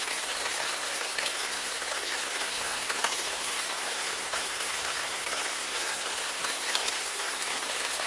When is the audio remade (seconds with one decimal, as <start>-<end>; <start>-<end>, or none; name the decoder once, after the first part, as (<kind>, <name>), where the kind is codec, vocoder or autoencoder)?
0.0-8.1 (codec, SNAC)